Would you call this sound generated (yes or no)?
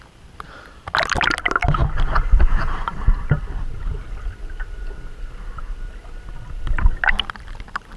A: no